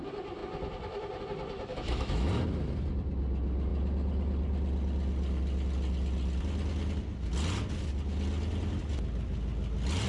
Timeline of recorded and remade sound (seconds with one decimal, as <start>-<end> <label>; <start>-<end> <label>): 0.0-1.7 recorded; 1.7-2.3 remade; 2.3-10.1 recorded